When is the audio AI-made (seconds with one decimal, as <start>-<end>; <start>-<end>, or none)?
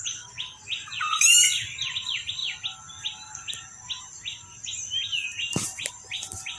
none